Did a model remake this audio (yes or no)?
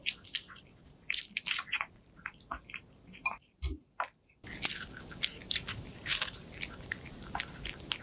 no